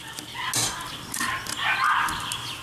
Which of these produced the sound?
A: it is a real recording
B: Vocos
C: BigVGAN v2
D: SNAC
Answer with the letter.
A